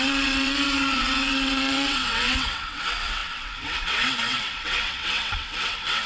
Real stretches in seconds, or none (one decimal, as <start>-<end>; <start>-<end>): none